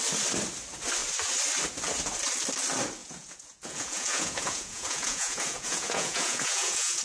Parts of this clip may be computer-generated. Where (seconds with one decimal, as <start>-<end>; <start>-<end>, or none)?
3.0-7.0